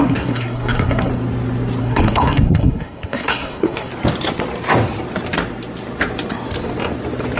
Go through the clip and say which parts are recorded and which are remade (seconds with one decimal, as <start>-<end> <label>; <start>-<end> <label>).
0.0-1.1 remade; 1.1-1.8 recorded; 1.8-3.9 remade; 3.9-7.4 recorded